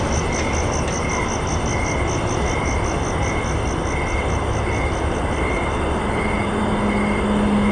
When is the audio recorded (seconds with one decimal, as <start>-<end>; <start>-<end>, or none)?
0.0-7.7